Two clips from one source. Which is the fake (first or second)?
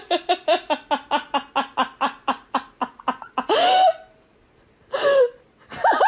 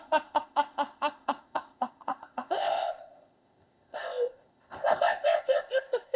second